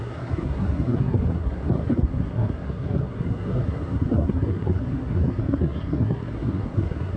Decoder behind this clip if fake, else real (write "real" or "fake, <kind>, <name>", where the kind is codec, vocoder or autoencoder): fake, codec, SNAC